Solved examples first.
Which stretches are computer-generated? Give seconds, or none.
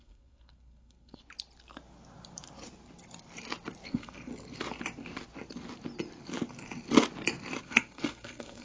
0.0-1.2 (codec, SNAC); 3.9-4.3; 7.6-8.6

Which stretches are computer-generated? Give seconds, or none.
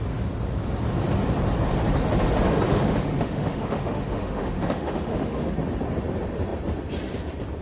2.7-5.5 (autoencoder, DAC-VAE)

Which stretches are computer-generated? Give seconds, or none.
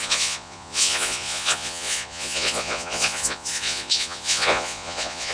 0.0-5.3 (vocoder, Vocos)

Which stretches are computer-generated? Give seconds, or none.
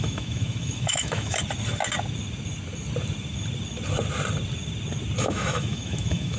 0.0-1.4 (autoencoder, DAC-VAE); 5.2-6.4